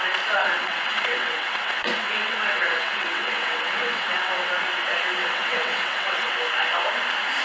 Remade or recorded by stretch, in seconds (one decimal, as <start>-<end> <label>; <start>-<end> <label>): 0.0-0.4 recorded; 0.4-4.5 remade; 4.5-5.2 recorded; 5.2-6.3 remade; 6.3-7.4 recorded